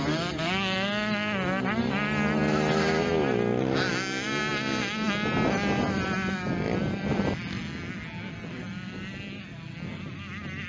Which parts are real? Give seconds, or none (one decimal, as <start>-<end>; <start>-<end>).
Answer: 0.0-10.7